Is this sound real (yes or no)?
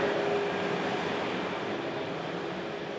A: yes